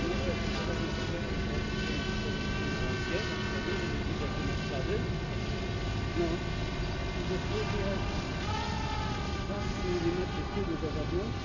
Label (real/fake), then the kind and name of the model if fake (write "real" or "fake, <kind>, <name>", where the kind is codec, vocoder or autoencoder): real